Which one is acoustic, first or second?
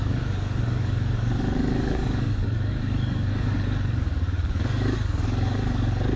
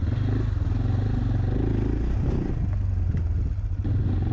second